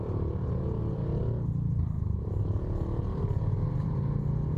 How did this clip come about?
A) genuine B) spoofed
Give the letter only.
A